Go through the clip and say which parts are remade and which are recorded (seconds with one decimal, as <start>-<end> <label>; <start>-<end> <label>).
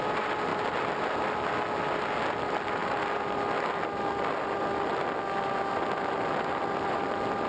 0.0-7.5 recorded